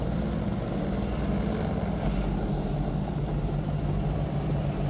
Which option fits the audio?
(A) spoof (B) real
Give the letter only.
B